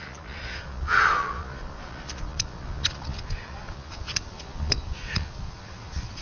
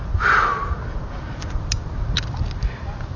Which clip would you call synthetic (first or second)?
first